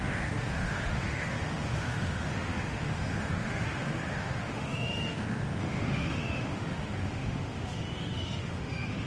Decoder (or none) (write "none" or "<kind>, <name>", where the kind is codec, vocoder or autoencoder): autoencoder, DAC-VAE